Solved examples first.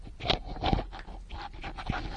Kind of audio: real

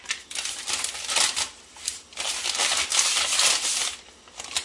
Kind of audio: real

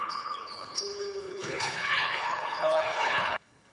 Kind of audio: fake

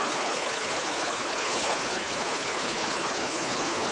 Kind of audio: fake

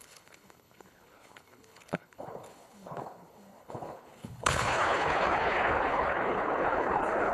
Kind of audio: fake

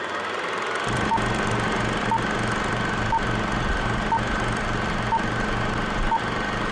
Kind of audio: real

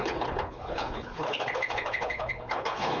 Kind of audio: fake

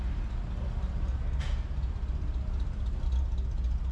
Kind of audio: real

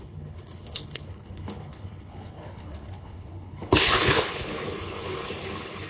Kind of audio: fake